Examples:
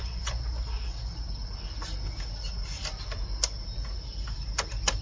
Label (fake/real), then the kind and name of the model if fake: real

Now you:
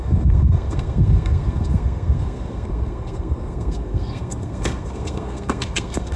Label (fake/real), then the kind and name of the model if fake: fake, codec, SNAC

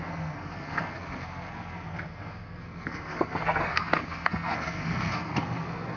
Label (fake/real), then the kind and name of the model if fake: fake, codec, SNAC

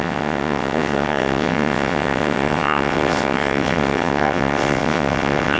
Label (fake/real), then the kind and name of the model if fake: fake, vocoder, WaveNeXt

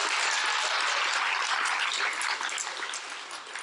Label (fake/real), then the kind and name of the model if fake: real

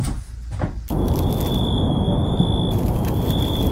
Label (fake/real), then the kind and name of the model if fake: real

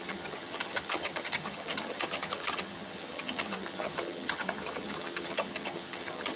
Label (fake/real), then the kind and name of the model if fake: fake, vocoder, HiFi-GAN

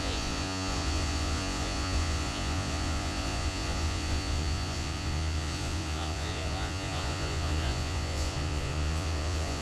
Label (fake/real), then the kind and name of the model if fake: fake, vocoder, Vocos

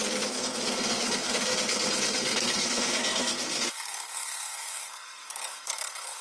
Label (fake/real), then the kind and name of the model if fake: fake, codec, SNAC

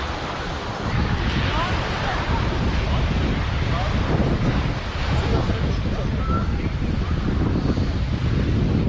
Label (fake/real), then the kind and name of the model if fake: real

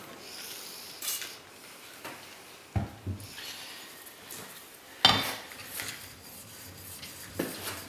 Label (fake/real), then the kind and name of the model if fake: real